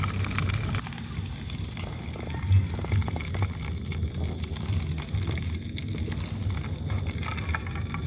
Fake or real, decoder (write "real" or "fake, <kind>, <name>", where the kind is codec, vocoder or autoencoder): real